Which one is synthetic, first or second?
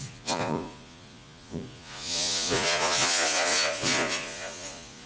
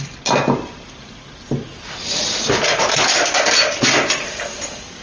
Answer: first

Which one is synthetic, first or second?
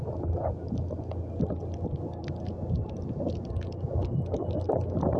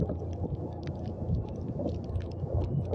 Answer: second